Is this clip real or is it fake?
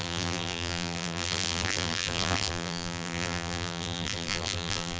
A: fake